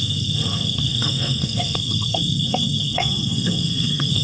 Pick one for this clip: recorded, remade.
remade